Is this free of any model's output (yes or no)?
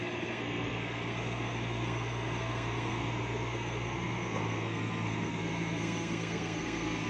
no